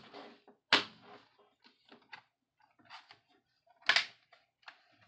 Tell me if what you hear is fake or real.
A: real